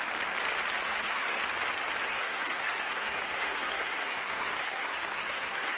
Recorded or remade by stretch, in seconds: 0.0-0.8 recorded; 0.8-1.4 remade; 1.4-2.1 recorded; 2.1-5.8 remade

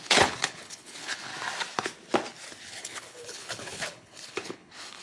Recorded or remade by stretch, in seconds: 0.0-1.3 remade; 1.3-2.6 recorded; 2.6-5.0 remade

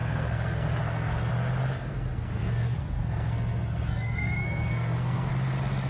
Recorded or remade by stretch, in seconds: 0.0-1.3 remade; 1.3-1.9 recorded; 1.9-5.3 remade; 5.3-5.9 recorded

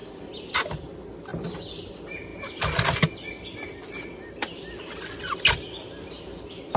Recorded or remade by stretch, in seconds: 0.0-0.5 remade; 0.5-6.8 recorded

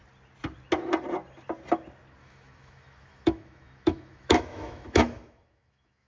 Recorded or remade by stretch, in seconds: 0.0-2.2 recorded; 2.2-6.1 remade

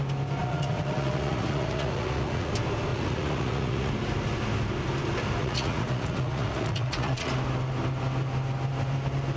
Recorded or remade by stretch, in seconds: 0.0-0.4 recorded; 0.4-2.5 remade; 2.5-2.9 recorded; 2.9-3.9 remade; 3.9-5.4 recorded; 5.4-7.3 remade; 7.3-9.4 recorded

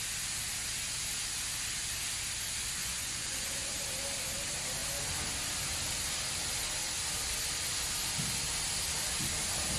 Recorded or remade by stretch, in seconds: 0.0-2.8 recorded; 2.8-3.7 remade; 3.7-9.8 recorded